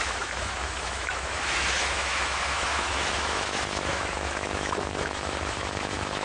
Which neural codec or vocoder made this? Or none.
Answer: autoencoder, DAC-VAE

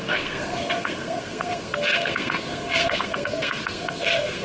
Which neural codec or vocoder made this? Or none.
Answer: codec, SNAC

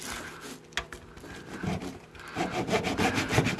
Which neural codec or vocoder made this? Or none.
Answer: none